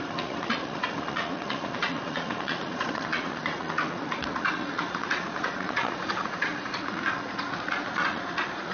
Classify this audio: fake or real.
fake